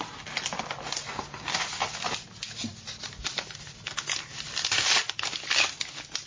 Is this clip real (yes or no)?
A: yes